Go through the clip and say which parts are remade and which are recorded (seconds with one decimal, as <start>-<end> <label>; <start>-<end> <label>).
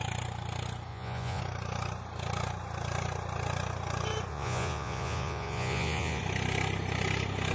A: 0.0-0.9 recorded; 0.9-1.4 remade; 1.4-4.3 recorded; 4.3-6.2 remade; 6.2-7.5 recorded